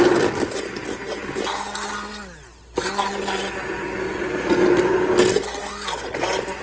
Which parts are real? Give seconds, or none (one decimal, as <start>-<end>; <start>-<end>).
0.0-6.6